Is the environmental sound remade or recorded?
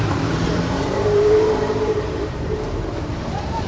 remade